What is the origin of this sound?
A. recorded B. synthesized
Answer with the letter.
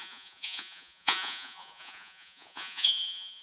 B